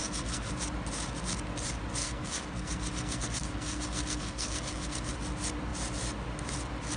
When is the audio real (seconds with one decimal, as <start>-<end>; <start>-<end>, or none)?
0.5-2.0; 5.1-7.0